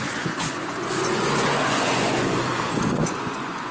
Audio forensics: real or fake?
fake